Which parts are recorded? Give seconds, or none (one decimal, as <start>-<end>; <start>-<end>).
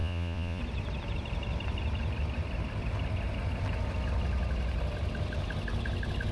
0.6-6.3